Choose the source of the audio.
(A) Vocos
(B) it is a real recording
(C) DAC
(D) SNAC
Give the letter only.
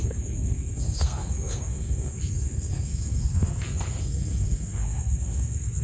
D